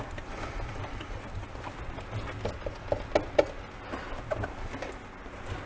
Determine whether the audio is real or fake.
real